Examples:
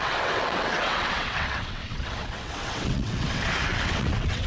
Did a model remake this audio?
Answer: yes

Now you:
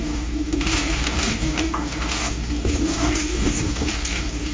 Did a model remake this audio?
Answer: yes